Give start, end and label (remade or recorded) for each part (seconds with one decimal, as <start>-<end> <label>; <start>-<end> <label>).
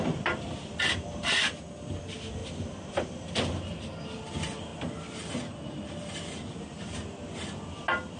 0.0-4.7 remade; 4.7-6.6 recorded; 6.6-8.2 remade